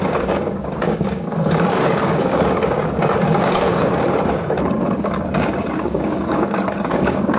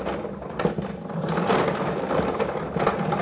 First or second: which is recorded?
second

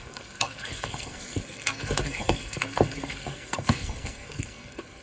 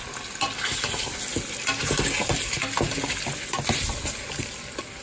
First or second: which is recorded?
second